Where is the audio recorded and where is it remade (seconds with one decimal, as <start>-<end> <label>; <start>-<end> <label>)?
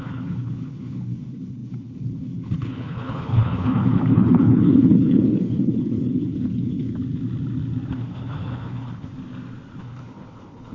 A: 0.0-6.9 remade; 6.9-7.9 recorded; 7.9-9.1 remade; 9.1-9.8 recorded; 9.8-10.7 remade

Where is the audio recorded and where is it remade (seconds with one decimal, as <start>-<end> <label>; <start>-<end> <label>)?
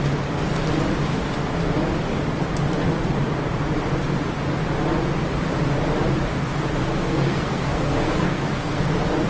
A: 0.0-6.9 recorded; 6.9-8.9 remade; 8.9-9.3 recorded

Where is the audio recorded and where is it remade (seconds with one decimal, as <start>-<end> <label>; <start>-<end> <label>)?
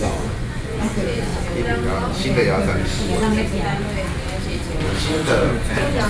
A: 0.0-1.3 remade; 1.3-5.0 recorded; 5.0-6.1 remade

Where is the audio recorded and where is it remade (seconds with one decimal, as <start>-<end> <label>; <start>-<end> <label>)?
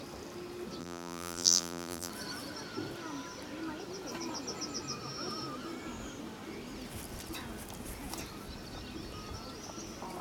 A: 0.0-0.8 recorded; 0.8-2.1 remade; 2.1-10.2 recorded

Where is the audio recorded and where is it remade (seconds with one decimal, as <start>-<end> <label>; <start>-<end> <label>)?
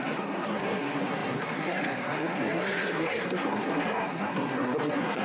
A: 0.0-5.2 remade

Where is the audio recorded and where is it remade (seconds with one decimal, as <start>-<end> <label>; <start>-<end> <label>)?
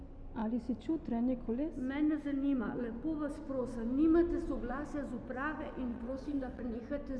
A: 0.0-5.9 recorded; 5.9-6.6 remade; 6.6-7.2 recorded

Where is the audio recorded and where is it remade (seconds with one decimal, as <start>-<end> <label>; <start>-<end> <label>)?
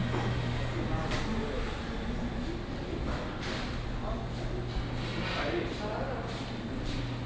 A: 0.0-7.3 recorded